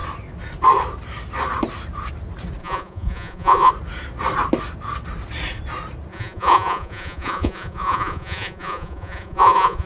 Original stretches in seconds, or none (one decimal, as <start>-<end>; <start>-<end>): 0.0-2.6; 3.7-6.1